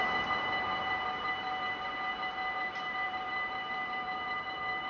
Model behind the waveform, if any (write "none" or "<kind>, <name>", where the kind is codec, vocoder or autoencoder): vocoder, BigVGAN v2